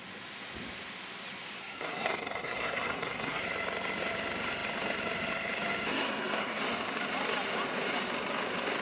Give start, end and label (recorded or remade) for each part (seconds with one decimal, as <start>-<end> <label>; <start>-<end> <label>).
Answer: 0.0-1.6 recorded; 1.6-3.4 remade; 3.4-5.9 recorded; 5.9-6.6 remade; 6.6-8.8 recorded

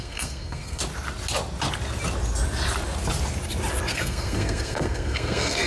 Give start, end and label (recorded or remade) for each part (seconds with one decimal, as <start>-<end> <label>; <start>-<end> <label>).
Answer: 0.0-0.8 remade; 0.8-3.9 recorded; 3.9-5.7 remade

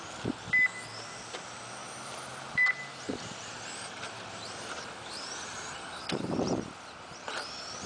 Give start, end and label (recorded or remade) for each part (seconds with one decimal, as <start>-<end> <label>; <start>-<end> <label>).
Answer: 0.0-1.8 recorded; 1.8-6.5 remade; 6.5-7.9 recorded

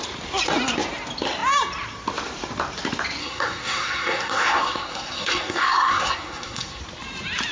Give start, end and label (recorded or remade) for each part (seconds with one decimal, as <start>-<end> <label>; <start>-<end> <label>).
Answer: 0.0-3.2 recorded; 3.2-6.8 remade; 6.8-7.5 recorded

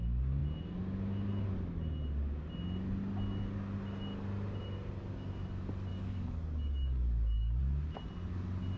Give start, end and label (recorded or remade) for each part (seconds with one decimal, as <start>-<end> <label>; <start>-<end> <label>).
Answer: 0.0-5.9 recorded; 5.9-7.6 remade; 7.6-8.8 recorded

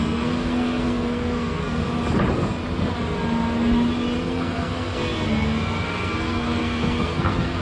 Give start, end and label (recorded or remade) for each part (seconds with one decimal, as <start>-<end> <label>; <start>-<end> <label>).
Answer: 0.0-1.8 remade; 1.8-4.2 recorded; 4.2-7.6 remade